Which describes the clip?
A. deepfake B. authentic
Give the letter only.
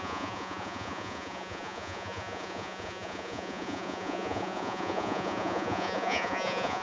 A